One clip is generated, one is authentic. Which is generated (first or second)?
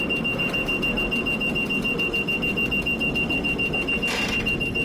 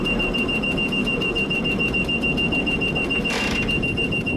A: second